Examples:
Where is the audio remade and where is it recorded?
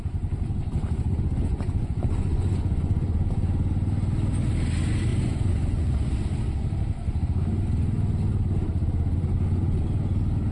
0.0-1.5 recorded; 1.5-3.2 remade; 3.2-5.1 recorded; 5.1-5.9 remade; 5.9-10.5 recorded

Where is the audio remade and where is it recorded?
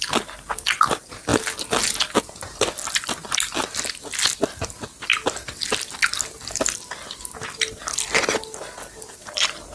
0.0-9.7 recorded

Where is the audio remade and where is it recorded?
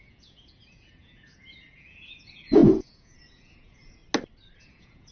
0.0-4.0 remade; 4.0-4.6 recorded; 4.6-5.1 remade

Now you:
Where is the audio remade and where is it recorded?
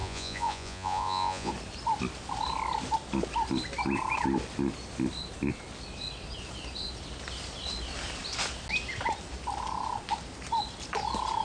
0.0-1.5 remade; 1.5-11.4 recorded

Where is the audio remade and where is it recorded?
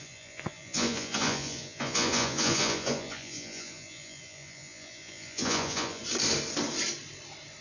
0.0-6.0 remade; 6.0-7.6 recorded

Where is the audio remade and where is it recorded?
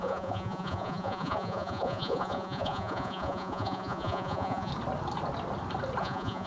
0.0-4.7 remade; 4.7-6.0 recorded; 6.0-6.5 remade